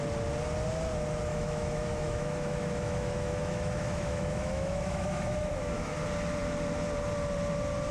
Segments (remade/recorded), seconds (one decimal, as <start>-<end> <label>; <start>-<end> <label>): 0.0-1.3 recorded; 1.3-6.0 remade; 6.0-7.9 recorded